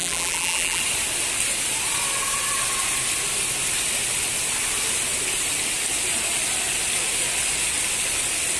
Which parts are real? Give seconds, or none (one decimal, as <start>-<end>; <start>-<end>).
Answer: 0.8-8.6